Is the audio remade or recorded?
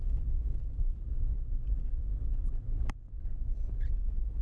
remade